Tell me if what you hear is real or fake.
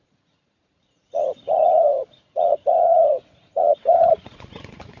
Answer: fake